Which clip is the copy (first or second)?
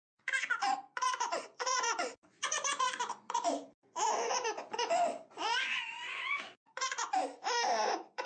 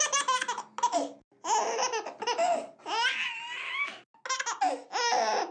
first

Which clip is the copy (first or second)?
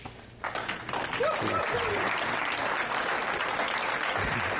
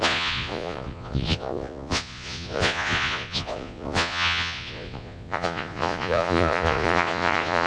second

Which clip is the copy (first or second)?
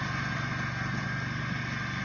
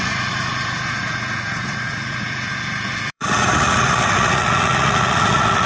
second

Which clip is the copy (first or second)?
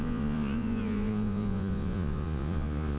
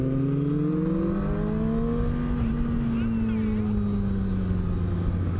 first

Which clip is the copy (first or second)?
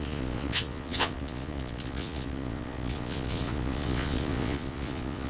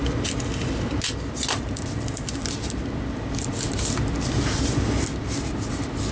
first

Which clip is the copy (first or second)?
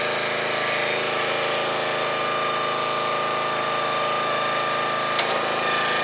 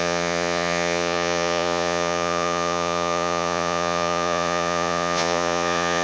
second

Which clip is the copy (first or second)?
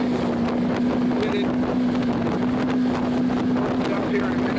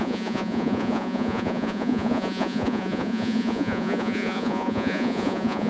second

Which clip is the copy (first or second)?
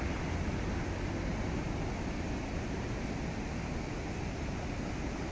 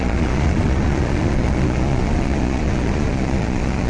second